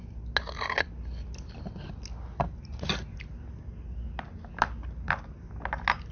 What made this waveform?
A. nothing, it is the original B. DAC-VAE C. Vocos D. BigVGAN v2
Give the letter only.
A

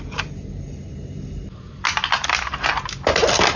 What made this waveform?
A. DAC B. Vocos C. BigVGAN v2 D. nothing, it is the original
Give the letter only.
D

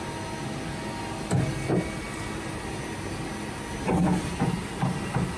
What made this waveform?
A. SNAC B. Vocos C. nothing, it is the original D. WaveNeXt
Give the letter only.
C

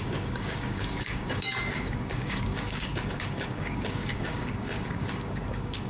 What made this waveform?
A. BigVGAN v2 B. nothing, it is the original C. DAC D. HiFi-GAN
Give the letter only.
C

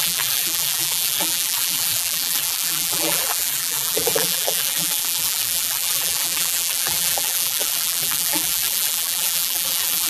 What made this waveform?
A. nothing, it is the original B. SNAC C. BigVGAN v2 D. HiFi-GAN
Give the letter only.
C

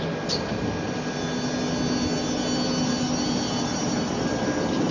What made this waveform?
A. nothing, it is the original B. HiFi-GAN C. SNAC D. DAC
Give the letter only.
A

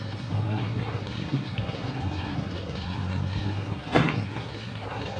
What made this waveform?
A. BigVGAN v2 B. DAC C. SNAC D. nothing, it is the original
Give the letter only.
C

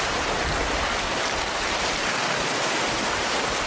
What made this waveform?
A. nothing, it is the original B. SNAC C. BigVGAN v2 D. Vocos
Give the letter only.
A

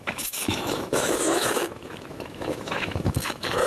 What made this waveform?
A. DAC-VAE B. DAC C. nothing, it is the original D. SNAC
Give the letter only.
A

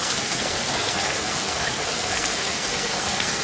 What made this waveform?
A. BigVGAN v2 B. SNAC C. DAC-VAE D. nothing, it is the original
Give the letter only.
B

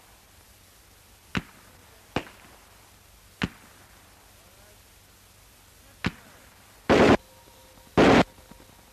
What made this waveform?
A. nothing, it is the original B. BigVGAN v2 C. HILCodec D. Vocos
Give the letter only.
A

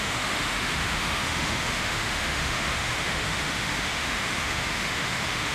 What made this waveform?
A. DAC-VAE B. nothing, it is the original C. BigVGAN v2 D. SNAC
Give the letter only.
A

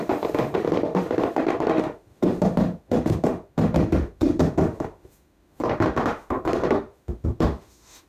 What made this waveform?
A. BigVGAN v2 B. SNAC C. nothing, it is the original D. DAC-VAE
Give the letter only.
D